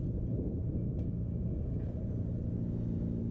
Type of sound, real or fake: real